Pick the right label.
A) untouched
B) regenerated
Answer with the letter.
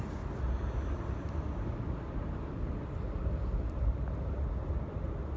A